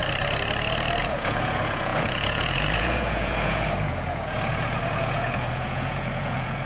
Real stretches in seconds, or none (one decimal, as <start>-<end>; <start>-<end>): 0.0-1.0